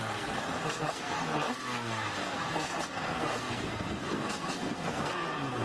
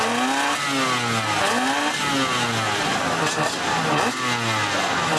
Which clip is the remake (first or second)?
first